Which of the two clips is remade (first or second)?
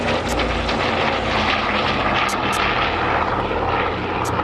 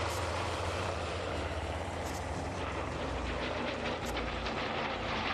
second